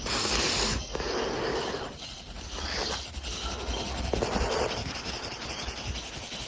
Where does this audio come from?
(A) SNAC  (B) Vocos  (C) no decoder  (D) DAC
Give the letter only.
C